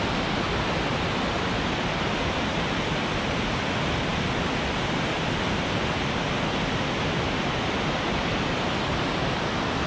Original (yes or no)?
yes